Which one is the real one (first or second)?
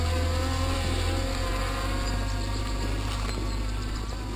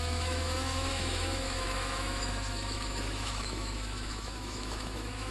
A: first